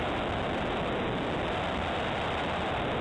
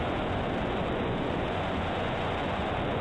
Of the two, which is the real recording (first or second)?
first